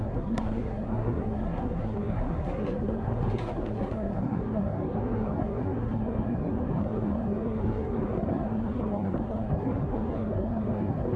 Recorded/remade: remade